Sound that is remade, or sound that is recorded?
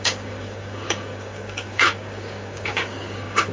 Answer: remade